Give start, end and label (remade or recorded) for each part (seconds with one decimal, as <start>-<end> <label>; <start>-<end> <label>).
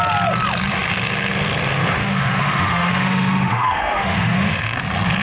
0.0-2.0 recorded; 2.0-4.8 remade; 4.8-5.2 recorded